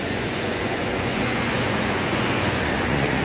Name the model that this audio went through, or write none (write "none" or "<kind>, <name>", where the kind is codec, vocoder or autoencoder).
vocoder, Vocos